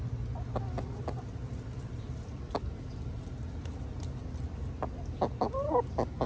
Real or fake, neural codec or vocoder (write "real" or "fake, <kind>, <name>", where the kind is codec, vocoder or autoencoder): real